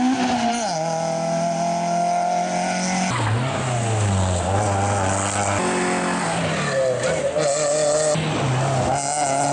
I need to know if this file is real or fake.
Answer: real